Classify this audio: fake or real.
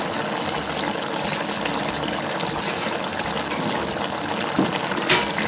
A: real